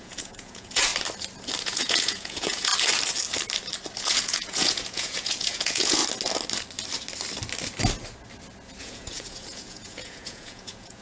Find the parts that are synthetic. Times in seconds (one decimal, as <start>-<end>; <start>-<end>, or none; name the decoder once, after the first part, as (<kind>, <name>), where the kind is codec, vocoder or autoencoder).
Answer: 0.0-0.9 (vocoder, Vocos); 1.6-2.7; 4.0-6.0; 8.8-11.0